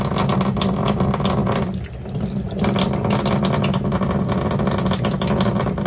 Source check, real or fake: real